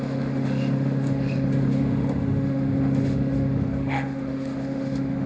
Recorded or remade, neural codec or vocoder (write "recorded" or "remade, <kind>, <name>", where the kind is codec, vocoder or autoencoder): remade, autoencoder, DAC-VAE